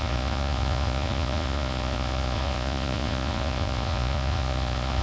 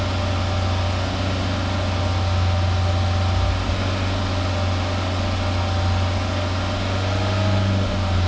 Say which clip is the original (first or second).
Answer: second